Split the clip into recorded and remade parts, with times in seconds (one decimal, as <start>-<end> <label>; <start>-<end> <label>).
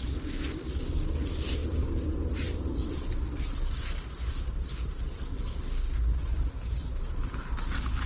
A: 0.0-1.6 recorded; 1.6-3.1 remade; 3.1-6.1 recorded; 6.1-6.9 remade; 6.9-8.1 recorded